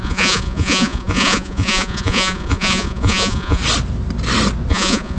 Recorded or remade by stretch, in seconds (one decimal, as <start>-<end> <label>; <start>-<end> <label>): 0.0-3.6 remade; 3.6-4.7 recorded; 4.7-5.2 remade